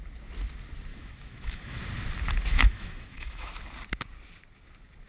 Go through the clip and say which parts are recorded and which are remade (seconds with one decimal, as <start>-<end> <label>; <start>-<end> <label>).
0.0-0.9 recorded; 0.9-1.8 remade; 1.8-2.5 recorded; 2.5-3.5 remade; 3.5-5.1 recorded